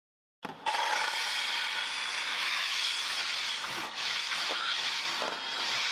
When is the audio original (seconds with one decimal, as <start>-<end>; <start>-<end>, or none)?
0.0-2.1; 3.2-4.0; 5.1-5.9